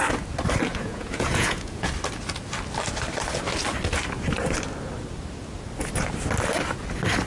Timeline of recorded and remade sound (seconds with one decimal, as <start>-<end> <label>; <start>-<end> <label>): 0.0-0.7 recorded; 0.7-1.9 remade; 1.9-7.3 recorded